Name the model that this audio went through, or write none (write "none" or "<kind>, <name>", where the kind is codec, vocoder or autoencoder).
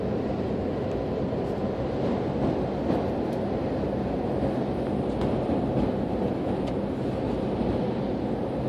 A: none